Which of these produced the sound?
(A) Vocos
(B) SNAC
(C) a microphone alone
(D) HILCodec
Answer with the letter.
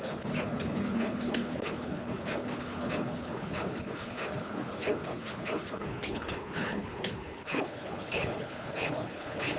D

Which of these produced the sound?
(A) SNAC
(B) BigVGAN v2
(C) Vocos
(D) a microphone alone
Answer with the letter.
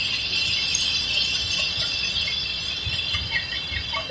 D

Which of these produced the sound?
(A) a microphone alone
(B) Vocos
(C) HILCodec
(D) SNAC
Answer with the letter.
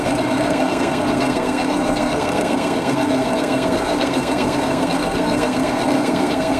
D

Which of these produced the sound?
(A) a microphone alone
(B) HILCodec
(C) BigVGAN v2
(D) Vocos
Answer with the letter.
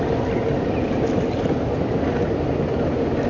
A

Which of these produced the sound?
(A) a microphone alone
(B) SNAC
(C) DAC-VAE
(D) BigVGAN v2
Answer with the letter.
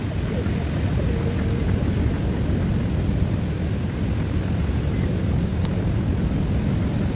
A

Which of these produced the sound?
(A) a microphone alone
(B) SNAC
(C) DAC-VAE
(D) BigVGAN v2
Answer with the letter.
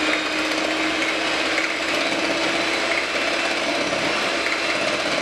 A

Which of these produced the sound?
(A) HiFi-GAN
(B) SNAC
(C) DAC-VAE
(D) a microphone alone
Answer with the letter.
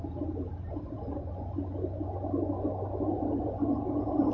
D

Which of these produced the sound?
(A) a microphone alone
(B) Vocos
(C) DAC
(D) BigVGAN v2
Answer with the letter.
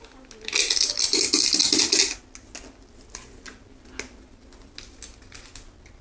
A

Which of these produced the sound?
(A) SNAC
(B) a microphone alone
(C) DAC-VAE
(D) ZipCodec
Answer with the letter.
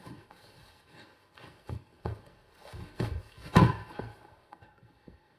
A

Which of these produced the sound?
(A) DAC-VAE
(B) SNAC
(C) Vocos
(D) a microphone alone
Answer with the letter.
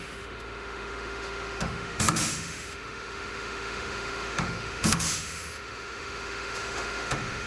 A